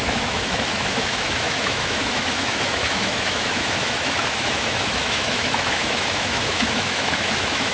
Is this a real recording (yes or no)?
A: no